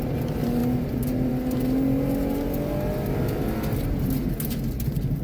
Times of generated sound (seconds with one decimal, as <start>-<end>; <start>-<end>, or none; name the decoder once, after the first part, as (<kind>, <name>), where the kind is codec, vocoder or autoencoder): none